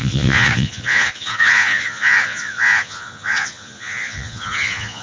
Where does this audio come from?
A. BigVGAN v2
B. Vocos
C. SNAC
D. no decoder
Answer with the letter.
B